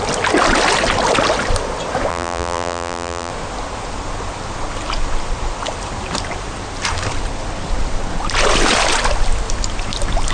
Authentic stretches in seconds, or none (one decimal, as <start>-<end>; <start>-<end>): 0.0-2.1; 3.3-10.3